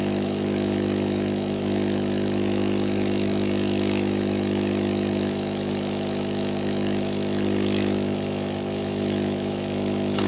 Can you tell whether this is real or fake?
fake